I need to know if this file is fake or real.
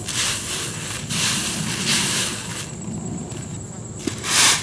real